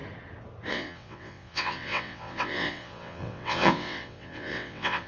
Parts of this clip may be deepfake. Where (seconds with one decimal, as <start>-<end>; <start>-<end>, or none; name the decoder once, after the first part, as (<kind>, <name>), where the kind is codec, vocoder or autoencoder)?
0.7-5.1 (vocoder, WaveNeXt)